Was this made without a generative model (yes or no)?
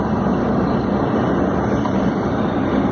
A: yes